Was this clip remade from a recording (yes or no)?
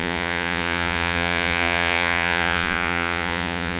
yes